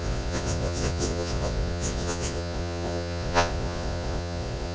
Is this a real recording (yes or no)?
no